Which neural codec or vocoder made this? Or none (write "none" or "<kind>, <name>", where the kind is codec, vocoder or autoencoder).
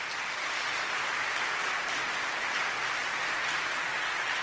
none